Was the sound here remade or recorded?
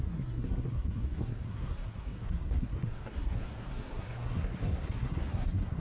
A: remade